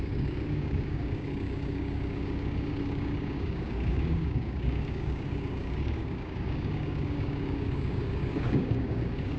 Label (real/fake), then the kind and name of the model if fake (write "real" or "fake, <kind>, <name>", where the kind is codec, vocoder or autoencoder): fake, codec, DAC